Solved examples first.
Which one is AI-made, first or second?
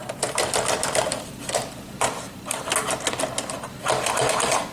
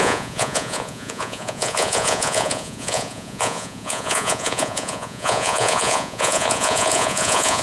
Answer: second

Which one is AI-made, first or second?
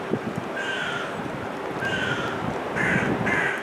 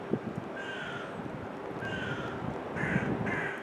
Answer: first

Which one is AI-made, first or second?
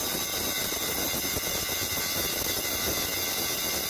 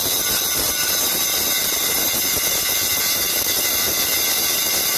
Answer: second